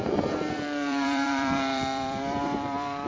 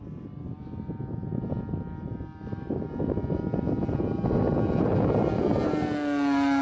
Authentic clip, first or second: second